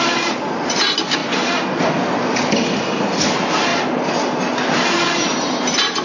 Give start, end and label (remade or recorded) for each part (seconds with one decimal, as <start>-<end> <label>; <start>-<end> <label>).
0.0-6.0 recorded